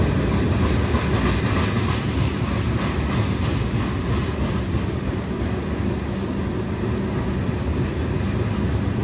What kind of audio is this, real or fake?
real